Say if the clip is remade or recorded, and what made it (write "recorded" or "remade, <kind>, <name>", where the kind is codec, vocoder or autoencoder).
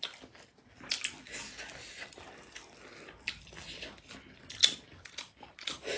recorded